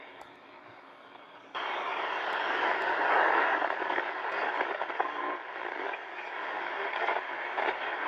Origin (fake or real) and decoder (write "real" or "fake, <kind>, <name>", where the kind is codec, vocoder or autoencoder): fake, codec, DAC